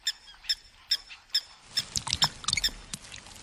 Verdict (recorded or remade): recorded